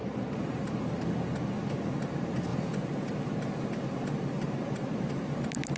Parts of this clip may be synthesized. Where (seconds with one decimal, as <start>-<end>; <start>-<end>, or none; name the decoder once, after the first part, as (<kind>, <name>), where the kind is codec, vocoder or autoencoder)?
1.8-2.5 (vocoder, BigVGAN v2); 3.7-5.8